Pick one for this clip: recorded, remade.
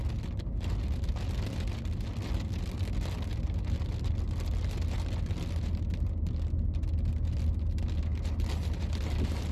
recorded